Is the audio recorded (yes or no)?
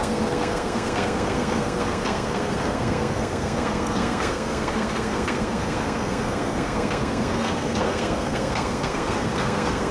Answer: no